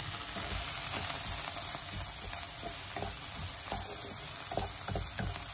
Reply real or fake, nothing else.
real